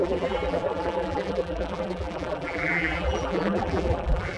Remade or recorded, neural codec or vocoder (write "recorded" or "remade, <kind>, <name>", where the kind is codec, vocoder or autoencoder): remade, vocoder, BigVGAN v2